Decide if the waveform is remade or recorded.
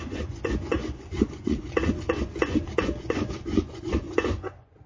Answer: remade